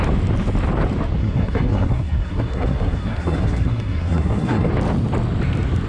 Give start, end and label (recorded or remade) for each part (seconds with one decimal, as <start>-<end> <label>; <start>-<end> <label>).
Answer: 0.0-1.2 recorded; 1.2-4.7 remade; 4.7-5.9 recorded